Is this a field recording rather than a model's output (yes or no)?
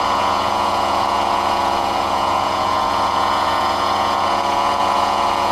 no